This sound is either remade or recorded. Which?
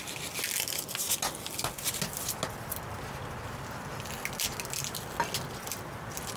recorded